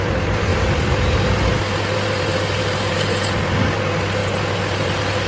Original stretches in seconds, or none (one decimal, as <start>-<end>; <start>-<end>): 0.0-5.3